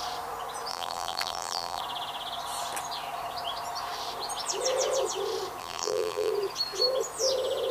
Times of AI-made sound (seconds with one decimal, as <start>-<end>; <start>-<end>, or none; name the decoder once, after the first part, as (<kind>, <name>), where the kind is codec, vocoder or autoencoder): 0.7-1.8 (vocoder, BigVGAN v2); 5.6-6.3